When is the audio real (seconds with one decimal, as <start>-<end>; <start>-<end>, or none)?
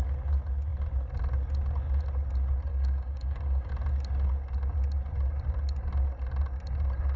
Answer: 0.0-2.7; 3.7-7.2